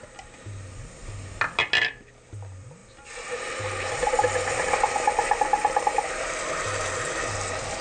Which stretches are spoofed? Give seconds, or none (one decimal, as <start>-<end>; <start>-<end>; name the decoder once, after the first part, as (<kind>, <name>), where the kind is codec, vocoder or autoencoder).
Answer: none